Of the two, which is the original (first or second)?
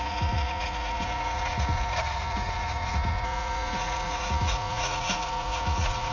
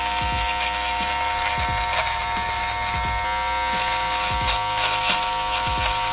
second